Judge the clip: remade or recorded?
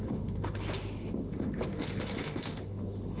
remade